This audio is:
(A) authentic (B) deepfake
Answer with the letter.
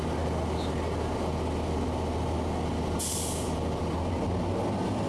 A